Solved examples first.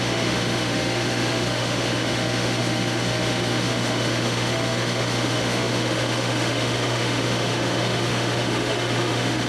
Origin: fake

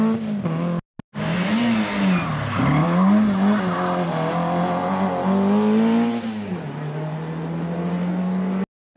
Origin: real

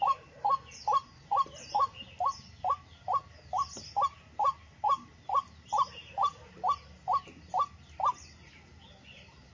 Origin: real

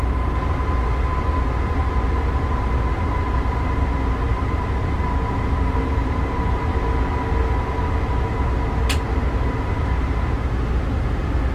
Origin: real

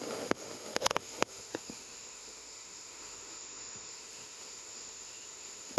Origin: fake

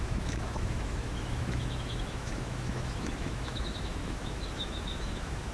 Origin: fake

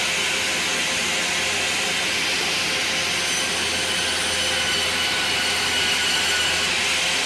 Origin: real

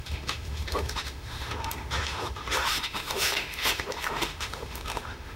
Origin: fake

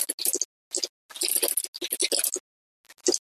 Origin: real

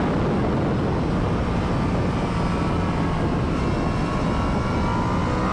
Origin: real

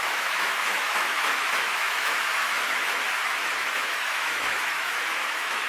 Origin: fake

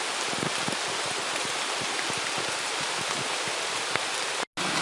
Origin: real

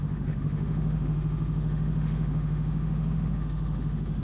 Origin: fake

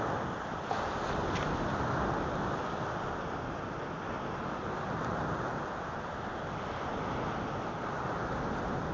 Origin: real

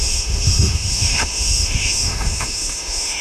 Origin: fake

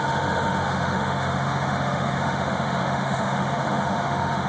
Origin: fake